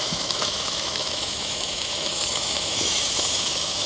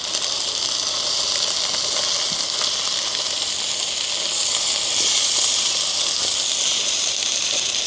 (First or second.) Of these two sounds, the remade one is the first